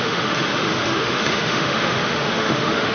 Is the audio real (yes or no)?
no